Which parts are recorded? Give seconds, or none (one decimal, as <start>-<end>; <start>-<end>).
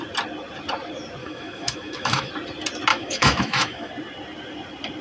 0.0-1.2; 2.3-2.9; 3.9-5.0